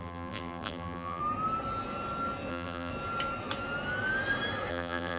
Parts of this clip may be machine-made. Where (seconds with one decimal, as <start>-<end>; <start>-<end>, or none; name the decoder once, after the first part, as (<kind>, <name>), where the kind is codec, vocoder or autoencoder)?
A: 0.0-1.2 (vocoder, BigVGAN v2); 2.5-2.9; 4.7-5.2